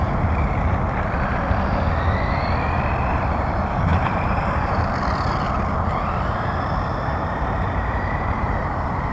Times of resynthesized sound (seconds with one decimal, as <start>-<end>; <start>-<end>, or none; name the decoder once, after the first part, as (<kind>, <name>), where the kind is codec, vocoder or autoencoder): 3.9-4.8 (vocoder, BigVGAN v2); 6.9-8.7